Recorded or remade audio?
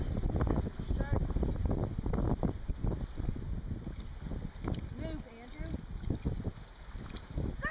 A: recorded